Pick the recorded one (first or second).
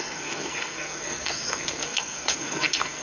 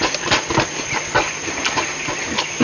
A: second